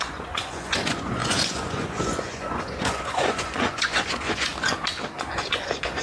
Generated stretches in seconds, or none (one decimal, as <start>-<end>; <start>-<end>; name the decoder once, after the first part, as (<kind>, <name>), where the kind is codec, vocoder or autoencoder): 0.0-4.5 (vocoder, Vocos); 5.3-6.0

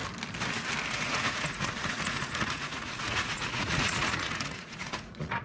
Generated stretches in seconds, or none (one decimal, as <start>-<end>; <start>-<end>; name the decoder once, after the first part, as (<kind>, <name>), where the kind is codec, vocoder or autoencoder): 0.9-5.4 (vocoder, Vocos)

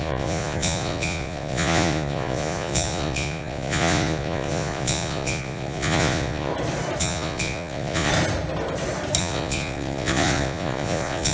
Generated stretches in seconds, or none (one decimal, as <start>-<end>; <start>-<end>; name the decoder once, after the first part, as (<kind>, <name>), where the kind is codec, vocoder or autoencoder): 0.0-6.5 (vocoder, Vocos); 7.0-8.1; 9.2-11.3